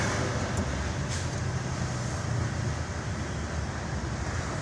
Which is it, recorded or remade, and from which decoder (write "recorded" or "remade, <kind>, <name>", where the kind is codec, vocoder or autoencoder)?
recorded